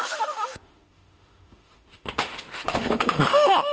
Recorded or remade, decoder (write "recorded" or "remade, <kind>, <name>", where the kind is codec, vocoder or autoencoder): remade, autoencoder, DAC-VAE